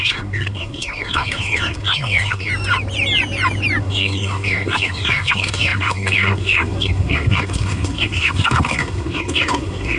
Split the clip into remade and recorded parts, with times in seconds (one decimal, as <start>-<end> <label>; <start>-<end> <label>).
0.0-2.5 remade; 2.5-3.8 recorded; 3.8-10.0 remade